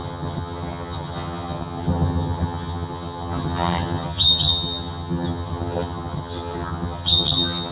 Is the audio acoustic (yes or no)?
no